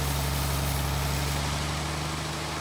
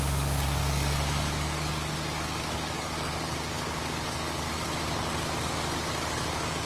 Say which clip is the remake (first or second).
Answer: second